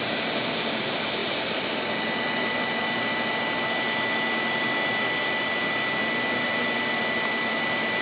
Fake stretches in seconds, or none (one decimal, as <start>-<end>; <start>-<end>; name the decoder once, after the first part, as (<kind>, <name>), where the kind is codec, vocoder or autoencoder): none